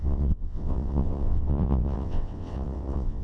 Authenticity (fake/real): fake